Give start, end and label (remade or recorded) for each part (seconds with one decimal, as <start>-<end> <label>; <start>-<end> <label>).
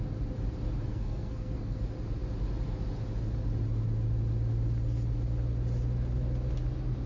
0.0-0.9 recorded; 0.9-1.8 remade; 1.8-7.1 recorded